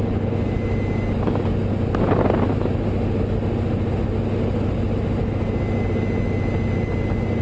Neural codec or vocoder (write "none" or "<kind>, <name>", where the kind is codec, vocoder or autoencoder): none